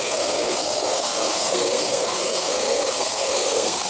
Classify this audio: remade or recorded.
remade